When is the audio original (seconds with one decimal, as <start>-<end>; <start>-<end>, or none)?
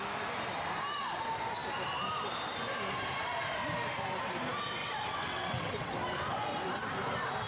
0.0-4.8; 5.9-7.5